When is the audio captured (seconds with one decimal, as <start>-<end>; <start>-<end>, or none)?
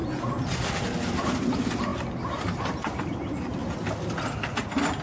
0.0-5.0